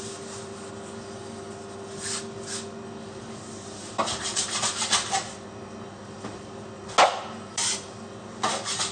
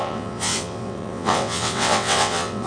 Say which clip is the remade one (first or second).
second